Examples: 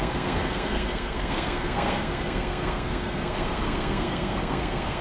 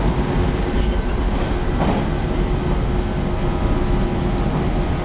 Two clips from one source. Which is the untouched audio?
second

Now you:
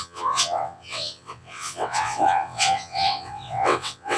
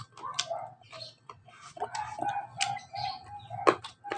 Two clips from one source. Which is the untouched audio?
second